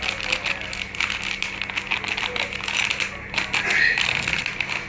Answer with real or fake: real